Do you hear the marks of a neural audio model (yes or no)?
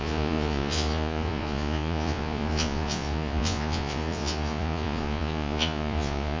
yes